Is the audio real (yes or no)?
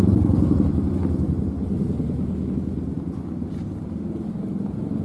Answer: yes